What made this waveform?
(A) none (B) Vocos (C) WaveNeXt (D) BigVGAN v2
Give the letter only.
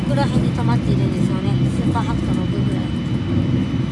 A